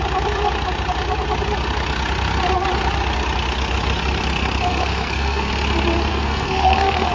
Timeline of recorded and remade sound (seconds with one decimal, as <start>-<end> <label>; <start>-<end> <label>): 0.0-4.7 recorded; 4.7-5.5 remade; 5.5-6.1 recorded; 6.1-7.1 remade